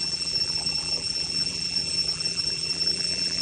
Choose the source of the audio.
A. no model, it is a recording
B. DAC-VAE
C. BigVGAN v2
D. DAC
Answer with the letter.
C